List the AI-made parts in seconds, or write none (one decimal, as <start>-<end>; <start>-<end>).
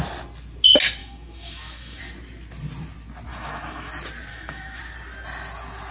1.0-2.0; 3.3-3.9; 4.3-4.8